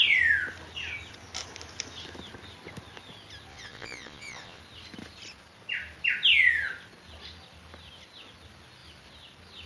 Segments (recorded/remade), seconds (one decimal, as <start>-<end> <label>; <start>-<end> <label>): 0.0-3.5 recorded; 3.5-4.6 remade; 4.6-9.7 recorded